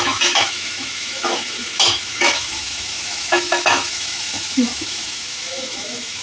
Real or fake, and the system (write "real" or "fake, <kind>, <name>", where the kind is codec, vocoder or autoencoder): fake, autoencoder, DAC-VAE